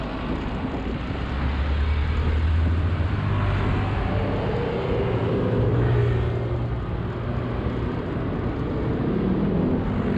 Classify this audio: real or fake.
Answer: real